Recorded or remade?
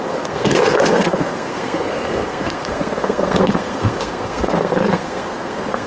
remade